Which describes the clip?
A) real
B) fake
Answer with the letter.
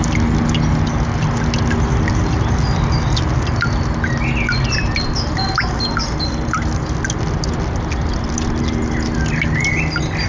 A